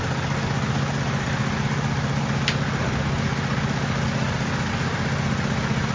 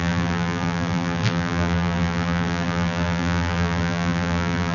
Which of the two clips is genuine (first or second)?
first